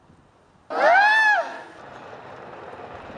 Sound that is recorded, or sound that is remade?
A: recorded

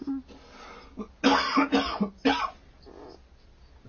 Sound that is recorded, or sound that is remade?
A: recorded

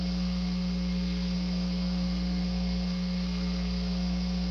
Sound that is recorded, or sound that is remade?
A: remade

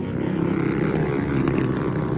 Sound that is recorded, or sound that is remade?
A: recorded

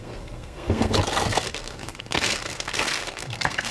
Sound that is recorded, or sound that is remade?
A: remade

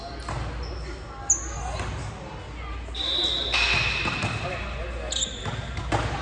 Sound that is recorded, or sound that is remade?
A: recorded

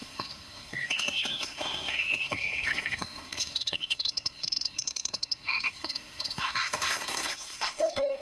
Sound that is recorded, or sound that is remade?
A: remade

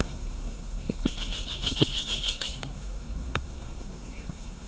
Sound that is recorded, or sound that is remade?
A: remade